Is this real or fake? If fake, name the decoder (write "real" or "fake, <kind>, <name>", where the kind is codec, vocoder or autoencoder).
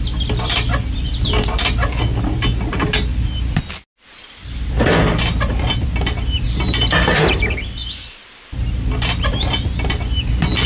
real